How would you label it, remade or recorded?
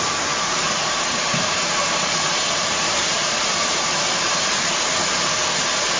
remade